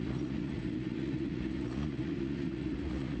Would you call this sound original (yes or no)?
no